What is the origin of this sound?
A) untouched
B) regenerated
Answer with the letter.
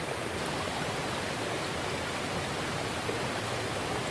A